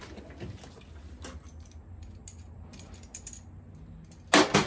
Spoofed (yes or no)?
no